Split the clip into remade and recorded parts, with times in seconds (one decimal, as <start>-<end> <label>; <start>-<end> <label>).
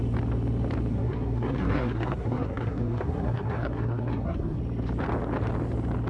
0.0-0.9 recorded; 0.9-4.6 remade; 4.6-6.1 recorded